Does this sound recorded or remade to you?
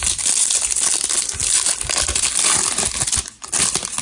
recorded